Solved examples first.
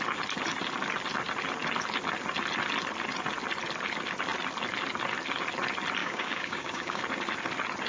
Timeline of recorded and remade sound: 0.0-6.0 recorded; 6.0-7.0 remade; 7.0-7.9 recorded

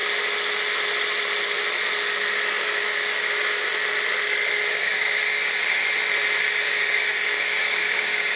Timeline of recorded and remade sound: 0.0-2.6 recorded; 2.6-3.7 remade; 3.7-4.8 recorded; 4.8-5.8 remade; 5.8-6.4 recorded; 6.4-8.4 remade

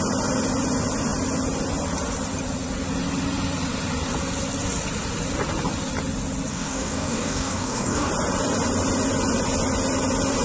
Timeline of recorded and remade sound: 0.0-6.5 recorded; 6.5-8.1 remade; 8.1-10.4 recorded

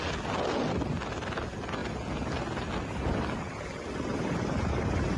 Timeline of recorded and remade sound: 0.0-5.2 recorded

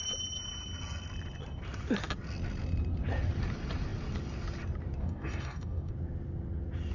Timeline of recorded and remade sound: 0.0-5.0 recorded; 5.0-5.9 remade; 5.9-6.9 recorded

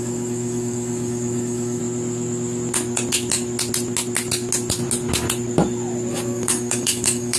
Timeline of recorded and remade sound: 0.0-1.8 remade; 1.8-6.1 recorded; 6.1-7.4 remade